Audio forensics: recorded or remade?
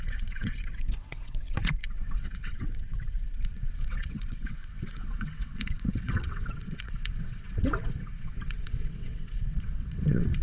remade